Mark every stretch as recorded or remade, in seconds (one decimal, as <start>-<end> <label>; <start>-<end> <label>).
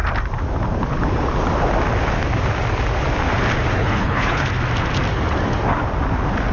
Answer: 0.0-3.8 recorded; 3.8-4.5 remade; 4.5-6.5 recorded